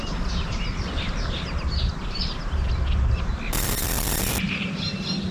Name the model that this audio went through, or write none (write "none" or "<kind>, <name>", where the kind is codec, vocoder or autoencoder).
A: none